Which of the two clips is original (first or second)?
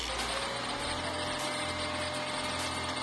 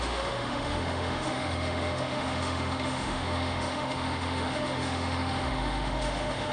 first